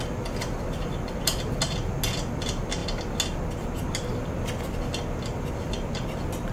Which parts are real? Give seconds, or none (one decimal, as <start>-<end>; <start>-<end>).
0.0-6.5